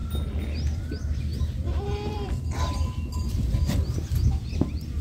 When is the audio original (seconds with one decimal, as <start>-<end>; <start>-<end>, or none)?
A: 0.0-1.3; 4.3-5.0